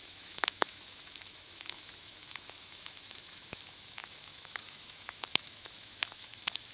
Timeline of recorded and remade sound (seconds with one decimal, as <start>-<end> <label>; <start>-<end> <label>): 0.0-6.7 remade